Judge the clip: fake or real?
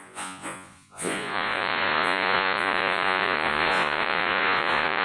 fake